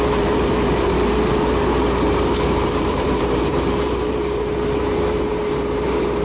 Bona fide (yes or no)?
no